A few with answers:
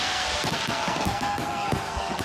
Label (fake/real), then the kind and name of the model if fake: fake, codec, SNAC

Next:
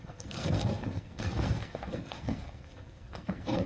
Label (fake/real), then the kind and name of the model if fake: fake, codec, SNAC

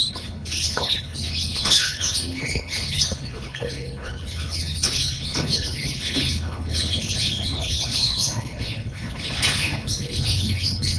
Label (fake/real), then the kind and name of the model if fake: fake, codec, HILCodec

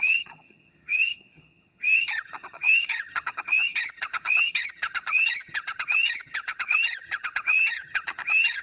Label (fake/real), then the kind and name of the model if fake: fake, vocoder, HiFi-GAN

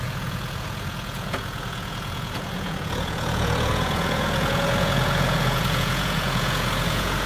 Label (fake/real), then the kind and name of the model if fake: fake, vocoder, Vocos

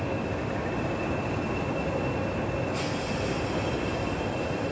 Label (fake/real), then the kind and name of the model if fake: real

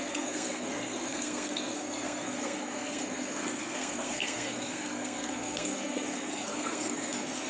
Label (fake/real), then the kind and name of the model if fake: fake, codec, SNAC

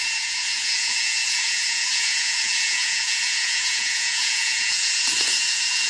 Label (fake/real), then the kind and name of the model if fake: fake, vocoder, Vocos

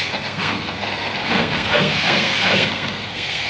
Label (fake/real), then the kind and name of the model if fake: fake, codec, SNAC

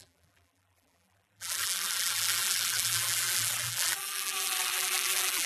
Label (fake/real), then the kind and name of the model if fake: fake, vocoder, BigVGAN v2